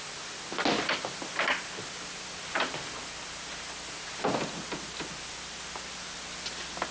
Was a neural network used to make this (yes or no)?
no